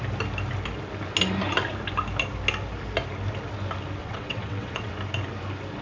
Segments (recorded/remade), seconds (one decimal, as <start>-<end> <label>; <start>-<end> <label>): 0.0-4.0 recorded; 4.0-4.9 remade; 4.9-5.8 recorded